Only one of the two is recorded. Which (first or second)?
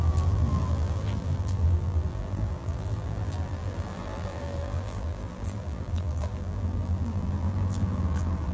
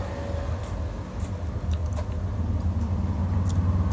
second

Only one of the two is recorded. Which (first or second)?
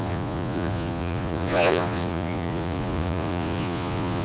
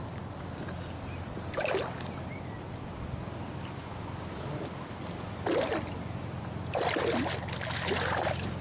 second